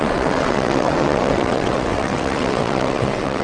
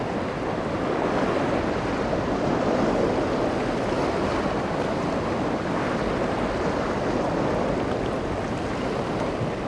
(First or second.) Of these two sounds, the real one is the second